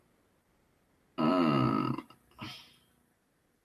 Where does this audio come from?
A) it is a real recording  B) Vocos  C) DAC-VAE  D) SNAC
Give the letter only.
A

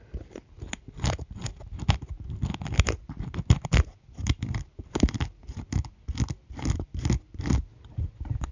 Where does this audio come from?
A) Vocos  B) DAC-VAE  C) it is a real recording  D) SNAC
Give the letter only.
C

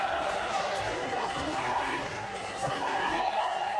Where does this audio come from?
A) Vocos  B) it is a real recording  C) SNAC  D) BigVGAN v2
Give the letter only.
C